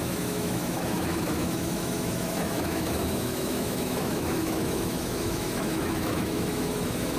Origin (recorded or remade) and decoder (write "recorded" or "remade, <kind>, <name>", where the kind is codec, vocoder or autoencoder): remade, autoencoder, DAC-VAE